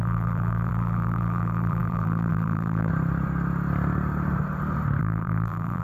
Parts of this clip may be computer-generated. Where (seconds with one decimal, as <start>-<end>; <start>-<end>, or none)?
0.0-2.9; 5.0-5.8